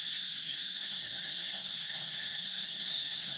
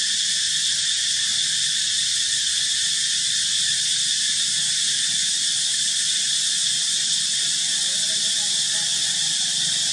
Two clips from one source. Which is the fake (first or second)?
first